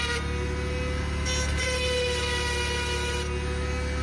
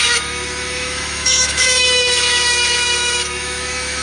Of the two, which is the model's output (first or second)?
second